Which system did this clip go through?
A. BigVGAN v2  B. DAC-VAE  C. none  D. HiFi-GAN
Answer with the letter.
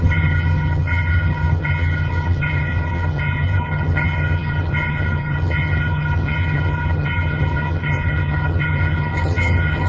D